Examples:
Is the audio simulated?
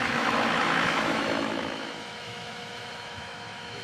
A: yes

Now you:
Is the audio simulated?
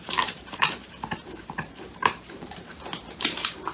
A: yes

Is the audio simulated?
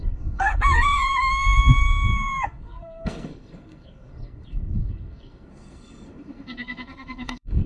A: yes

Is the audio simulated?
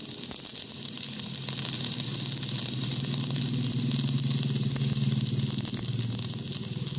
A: no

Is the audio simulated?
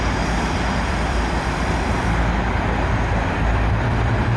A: yes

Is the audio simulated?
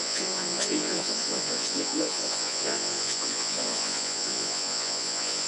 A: yes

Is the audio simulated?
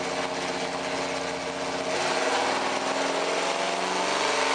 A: no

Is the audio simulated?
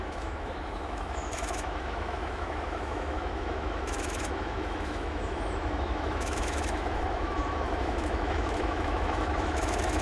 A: yes